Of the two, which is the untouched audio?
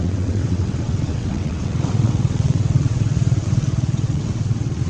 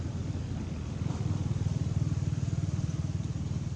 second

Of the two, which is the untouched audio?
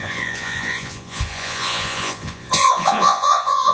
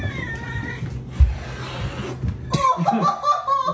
second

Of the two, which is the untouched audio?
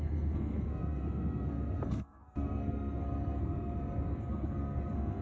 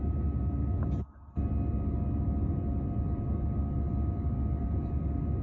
second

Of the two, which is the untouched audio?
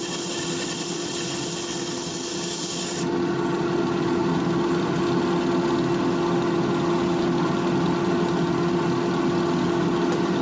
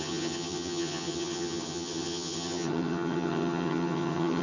first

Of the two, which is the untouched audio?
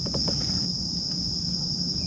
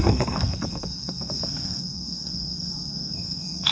first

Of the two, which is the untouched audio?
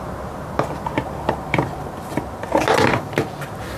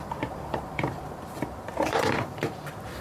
first